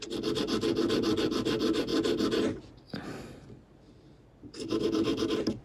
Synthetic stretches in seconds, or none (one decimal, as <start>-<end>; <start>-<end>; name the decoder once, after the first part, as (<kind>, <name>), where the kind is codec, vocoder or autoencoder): none